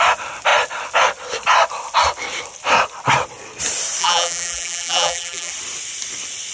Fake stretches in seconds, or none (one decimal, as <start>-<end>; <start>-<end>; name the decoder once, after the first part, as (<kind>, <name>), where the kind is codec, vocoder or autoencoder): 4.0-5.5 (vocoder, BigVGAN v2)